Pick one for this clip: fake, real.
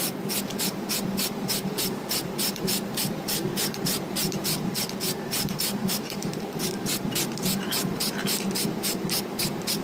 fake